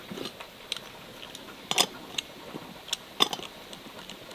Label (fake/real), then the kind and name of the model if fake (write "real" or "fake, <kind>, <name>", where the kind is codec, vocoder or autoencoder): real